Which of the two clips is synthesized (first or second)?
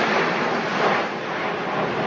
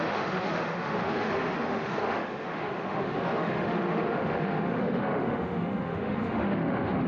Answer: second